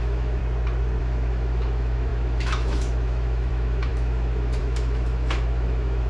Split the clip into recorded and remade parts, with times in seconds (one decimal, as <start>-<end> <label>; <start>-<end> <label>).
0.0-0.4 remade; 0.4-1.0 recorded; 1.0-6.1 remade